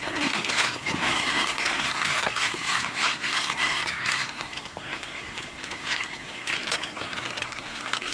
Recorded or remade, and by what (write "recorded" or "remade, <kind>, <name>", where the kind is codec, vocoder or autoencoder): remade, codec, SNAC